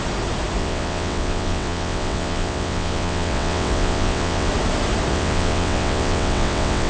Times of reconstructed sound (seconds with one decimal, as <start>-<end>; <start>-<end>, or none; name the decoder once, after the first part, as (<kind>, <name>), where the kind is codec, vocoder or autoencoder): 0.6-4.5 (vocoder, WaveNeXt); 5.1-6.9